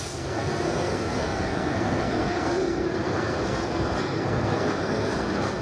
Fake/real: fake